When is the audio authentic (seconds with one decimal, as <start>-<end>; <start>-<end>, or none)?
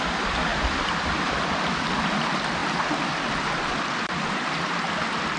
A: 0.5-2.2